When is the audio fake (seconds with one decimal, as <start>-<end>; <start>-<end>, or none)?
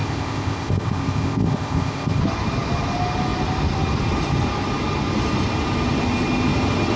0.0-2.2